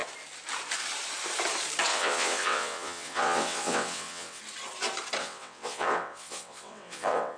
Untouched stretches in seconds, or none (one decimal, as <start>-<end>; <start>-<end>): 0.0-1.9; 4.4-5.2